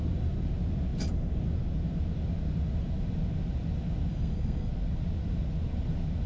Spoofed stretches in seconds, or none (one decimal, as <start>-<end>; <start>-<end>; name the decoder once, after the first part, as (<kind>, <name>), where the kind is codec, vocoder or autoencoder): 4.1-4.7 (codec, SNAC)